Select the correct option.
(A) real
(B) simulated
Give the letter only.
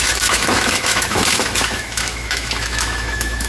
B